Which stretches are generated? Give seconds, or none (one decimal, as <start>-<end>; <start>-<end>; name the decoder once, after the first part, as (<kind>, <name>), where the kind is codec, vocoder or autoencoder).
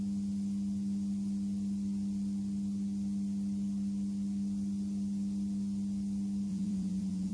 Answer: 6.5-7.3 (vocoder, Vocos)